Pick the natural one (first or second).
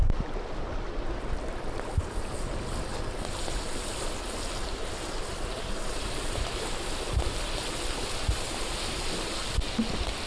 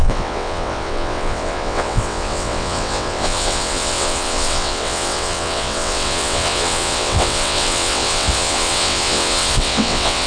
first